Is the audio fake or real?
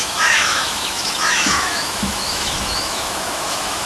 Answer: fake